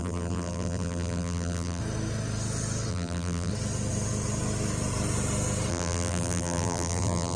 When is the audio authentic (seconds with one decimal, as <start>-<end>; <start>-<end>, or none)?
1.8-2.9; 3.5-5.7

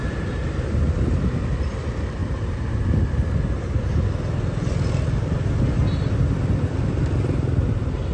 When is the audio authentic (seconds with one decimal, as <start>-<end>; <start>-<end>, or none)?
0.0-2.2; 2.8-8.1

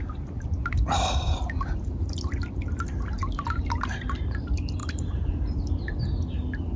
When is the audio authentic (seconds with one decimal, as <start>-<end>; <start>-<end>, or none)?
0.0-4.8; 5.5-6.8

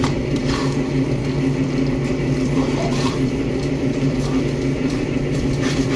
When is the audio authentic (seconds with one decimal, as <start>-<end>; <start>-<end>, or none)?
0.4-1.6

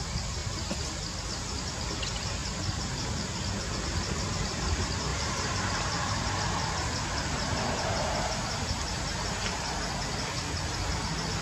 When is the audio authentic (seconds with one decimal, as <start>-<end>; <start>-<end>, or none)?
0.0-2.4; 3.3-5.1; 6.3-11.4

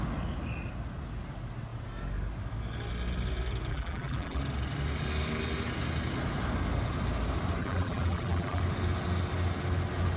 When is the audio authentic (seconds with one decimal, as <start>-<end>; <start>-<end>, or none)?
0.0-3.7; 4.4-7.6; 8.6-10.2

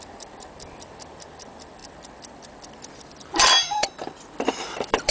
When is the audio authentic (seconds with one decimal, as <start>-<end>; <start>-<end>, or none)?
none